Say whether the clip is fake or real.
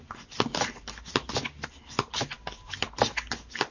real